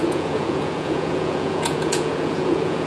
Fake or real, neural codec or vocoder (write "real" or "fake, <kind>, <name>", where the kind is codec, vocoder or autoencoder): fake, vocoder, Vocos